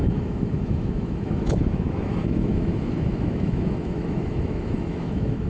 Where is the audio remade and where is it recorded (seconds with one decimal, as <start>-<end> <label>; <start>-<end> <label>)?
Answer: 0.0-5.5 remade